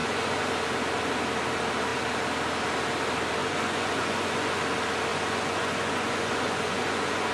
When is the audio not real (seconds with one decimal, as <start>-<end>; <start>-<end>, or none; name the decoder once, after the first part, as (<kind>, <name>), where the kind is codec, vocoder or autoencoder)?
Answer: 0.0-0.5 (vocoder, Vocos); 3.4-4.6; 5.1-7.3